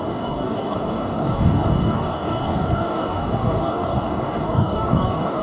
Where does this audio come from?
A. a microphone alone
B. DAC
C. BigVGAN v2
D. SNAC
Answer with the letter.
B